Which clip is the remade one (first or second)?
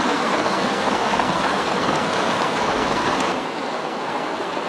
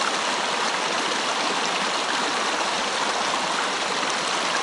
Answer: first